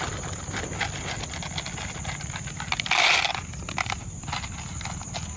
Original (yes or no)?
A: yes